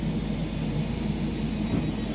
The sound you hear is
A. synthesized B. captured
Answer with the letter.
B